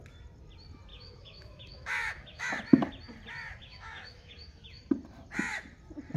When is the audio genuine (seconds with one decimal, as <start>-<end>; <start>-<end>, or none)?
0.0-0.9; 2.5-3.6; 4.8-6.2

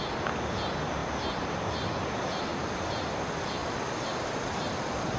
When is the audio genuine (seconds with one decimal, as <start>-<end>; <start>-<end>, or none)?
0.0-5.2

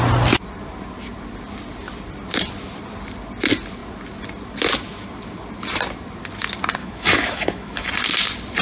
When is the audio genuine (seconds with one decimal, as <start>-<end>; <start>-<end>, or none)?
0.0-6.8; 7.9-8.6